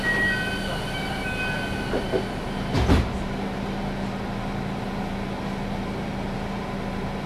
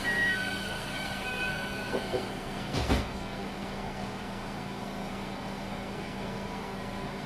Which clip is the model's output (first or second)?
second